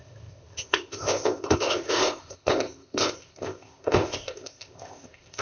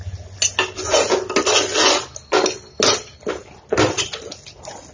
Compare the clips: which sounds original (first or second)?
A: second